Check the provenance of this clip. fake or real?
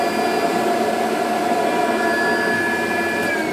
real